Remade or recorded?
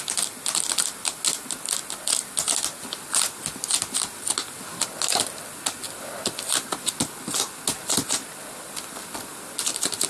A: recorded